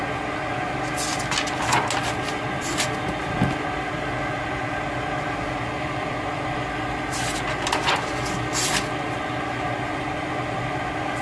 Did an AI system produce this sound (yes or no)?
no